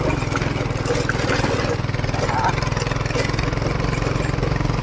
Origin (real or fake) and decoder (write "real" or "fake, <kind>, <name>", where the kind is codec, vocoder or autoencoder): real